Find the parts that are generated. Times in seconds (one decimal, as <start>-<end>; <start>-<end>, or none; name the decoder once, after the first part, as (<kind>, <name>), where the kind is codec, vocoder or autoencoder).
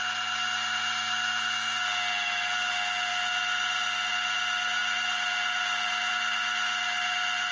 none